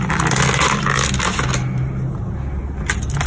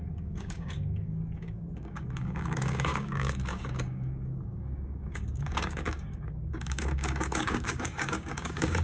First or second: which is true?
first